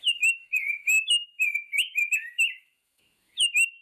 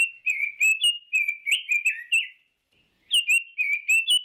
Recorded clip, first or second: second